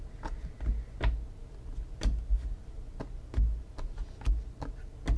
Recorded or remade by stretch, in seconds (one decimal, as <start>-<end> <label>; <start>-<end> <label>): 0.0-5.2 recorded